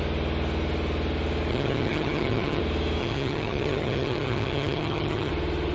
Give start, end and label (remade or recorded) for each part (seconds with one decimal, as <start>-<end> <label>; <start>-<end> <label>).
0.0-1.5 recorded; 1.5-2.6 remade; 2.6-3.0 recorded; 3.0-5.3 remade; 5.3-5.7 recorded